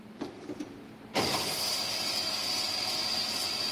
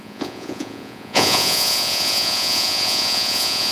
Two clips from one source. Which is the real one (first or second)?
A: first